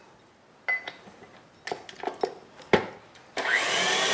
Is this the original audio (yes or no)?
yes